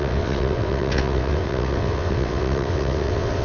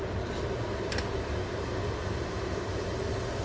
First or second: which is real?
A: second